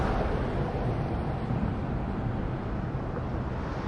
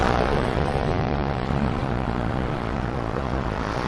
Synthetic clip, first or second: second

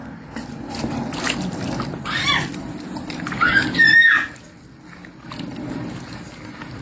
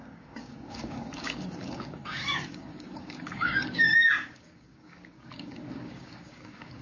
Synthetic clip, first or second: second